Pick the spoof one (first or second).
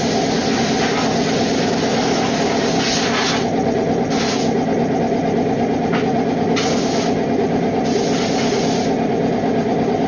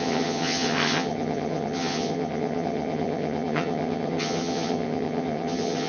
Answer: second